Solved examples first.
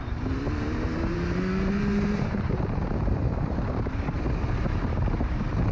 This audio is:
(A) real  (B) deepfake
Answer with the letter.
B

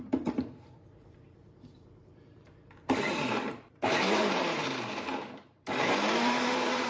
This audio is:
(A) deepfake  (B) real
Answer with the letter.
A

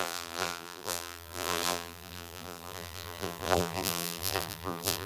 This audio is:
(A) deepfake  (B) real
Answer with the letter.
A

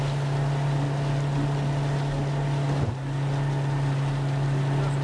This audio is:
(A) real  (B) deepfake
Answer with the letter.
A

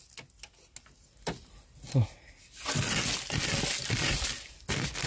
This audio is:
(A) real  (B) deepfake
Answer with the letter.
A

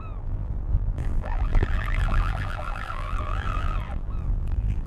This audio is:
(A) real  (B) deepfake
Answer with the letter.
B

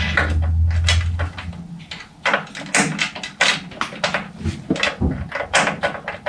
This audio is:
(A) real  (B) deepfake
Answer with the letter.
A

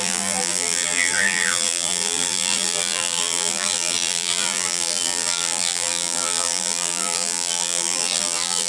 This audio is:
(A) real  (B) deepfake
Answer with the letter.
B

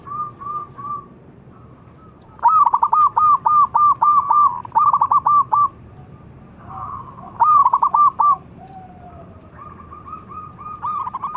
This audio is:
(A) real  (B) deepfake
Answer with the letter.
B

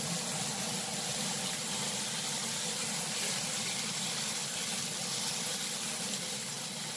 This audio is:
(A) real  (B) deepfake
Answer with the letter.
A